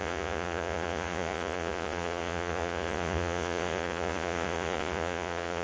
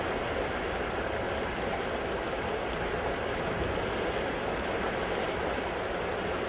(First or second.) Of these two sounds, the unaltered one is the second